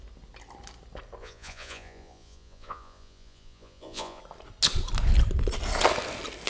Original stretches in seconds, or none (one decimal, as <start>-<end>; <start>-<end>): 0.0-1.2; 4.2-6.5